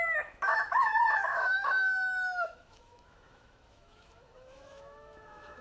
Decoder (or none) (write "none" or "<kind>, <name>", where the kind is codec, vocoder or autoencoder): autoencoder, DAC-VAE